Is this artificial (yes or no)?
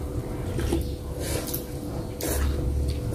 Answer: no